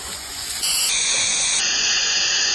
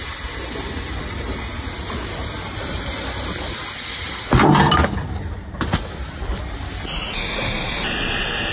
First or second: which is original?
second